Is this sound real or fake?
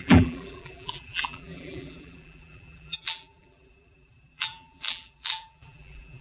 fake